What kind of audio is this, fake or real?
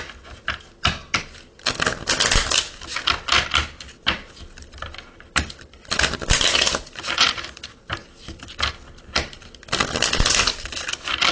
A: real